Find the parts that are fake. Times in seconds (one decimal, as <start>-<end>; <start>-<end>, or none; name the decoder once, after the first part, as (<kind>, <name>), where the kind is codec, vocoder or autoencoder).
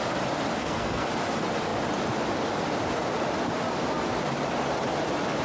0.6-1.1 (codec, SNAC)